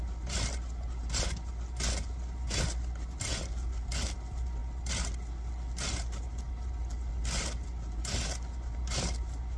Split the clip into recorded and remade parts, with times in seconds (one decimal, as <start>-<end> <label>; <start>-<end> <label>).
0.0-9.6 recorded